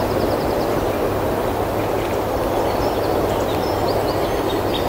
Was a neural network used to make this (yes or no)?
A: no